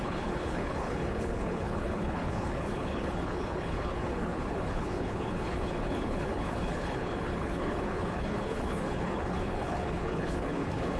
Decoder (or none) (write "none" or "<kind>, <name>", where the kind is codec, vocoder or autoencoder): codec, HILCodec